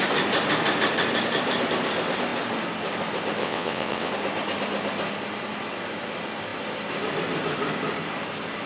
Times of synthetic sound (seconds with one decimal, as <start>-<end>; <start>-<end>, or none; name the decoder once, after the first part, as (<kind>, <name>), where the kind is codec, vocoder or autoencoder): 3.4-4.1 (vocoder, WaveNeXt)